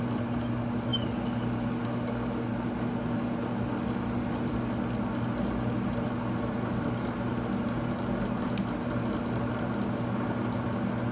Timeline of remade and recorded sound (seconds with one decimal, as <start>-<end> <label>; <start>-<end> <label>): 0.0-11.1 recorded